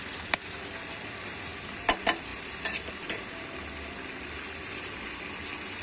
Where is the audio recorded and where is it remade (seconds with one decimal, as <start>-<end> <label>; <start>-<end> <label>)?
0.0-2.3 recorded; 2.3-2.9 remade; 2.9-5.8 recorded

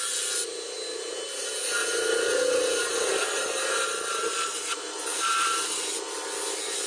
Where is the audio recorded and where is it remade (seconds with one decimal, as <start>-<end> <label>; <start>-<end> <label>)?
0.0-1.8 recorded; 1.8-5.9 remade; 5.9-6.9 recorded

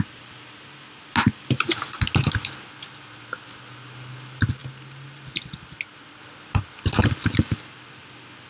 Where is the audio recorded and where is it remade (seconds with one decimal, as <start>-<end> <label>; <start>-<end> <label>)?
0.0-7.0 recorded; 7.0-7.6 remade; 7.6-8.5 recorded

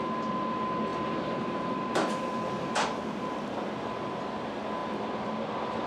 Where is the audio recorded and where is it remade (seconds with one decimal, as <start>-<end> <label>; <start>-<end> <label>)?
0.0-0.9 recorded; 0.9-3.4 remade; 3.4-5.9 recorded

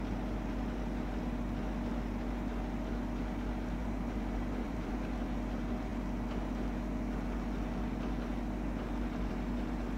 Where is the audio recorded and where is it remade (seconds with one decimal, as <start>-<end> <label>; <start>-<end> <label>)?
0.0-3.8 recorded; 3.8-4.9 remade; 4.9-10.0 recorded

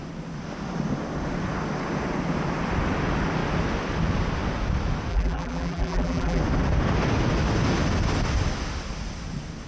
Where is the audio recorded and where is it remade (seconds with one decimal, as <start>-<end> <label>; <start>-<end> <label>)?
0.0-5.1 recorded; 5.1-6.4 remade; 6.4-9.7 recorded

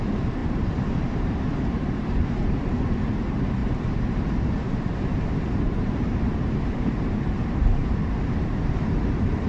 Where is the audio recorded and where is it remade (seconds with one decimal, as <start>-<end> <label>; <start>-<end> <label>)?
0.0-7.8 remade; 7.8-8.4 recorded; 8.4-9.5 remade

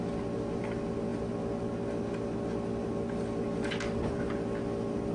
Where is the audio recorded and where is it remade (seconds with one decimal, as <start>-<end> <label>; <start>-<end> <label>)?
0.0-5.1 recorded